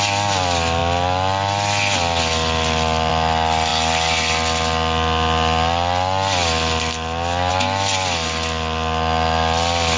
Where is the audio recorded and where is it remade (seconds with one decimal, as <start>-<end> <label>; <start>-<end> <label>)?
0.0-10.0 recorded